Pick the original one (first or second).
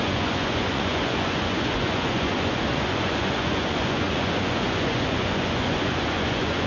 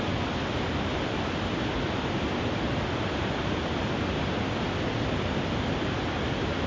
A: second